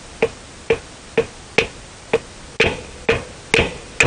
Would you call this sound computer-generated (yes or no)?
no